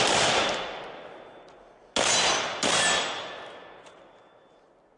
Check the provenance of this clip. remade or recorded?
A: recorded